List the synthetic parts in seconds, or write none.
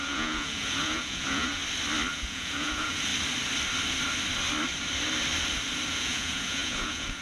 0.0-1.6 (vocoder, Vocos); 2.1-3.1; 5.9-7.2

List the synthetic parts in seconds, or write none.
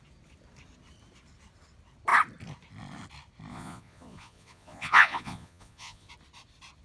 3.5-6.1 (vocoder, Vocos)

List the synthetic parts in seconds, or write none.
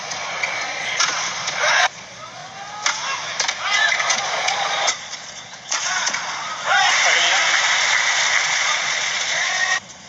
0.0-2.4 (vocoder, Vocos); 4.0-6.5; 8.5-10.1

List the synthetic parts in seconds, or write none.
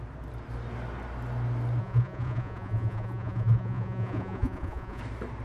1.8-5.0 (vocoder, Vocos)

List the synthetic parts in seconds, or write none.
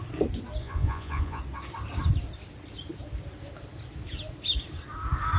0.6-1.4 (vocoder, Vocos)